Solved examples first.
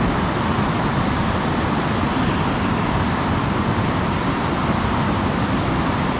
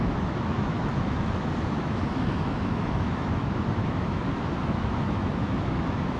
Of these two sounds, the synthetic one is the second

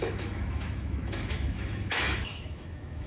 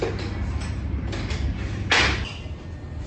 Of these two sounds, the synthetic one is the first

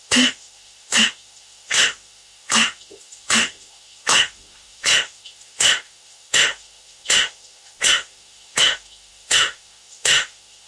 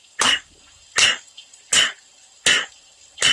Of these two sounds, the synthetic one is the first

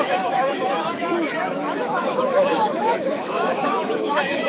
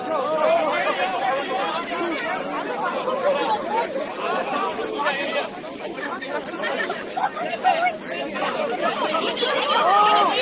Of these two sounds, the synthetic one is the first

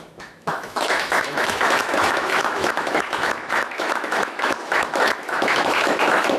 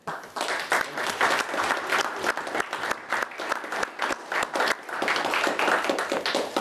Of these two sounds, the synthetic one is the first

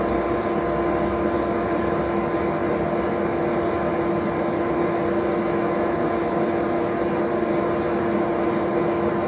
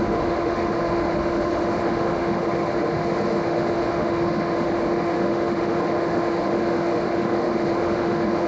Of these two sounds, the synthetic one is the second